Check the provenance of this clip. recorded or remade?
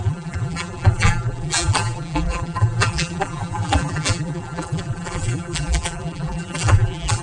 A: remade